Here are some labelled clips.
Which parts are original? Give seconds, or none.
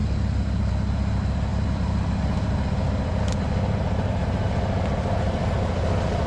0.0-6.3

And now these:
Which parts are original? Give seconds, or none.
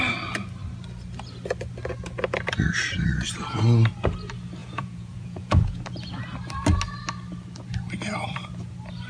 0.0-4.6; 5.8-9.1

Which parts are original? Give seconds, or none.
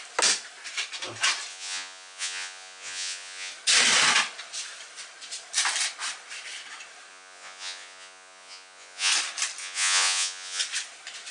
0.0-1.5; 3.5-7.1; 9.1-9.6; 10.6-11.3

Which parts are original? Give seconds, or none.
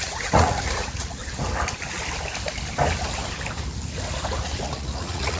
1.2-4.4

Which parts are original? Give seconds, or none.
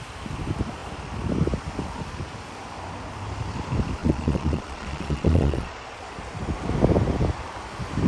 0.0-4.0; 6.0-8.1